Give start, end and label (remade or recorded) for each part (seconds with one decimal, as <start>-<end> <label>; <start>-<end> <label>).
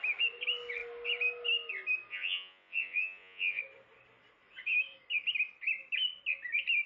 0.0-2.1 recorded; 2.1-3.6 remade; 3.6-6.9 recorded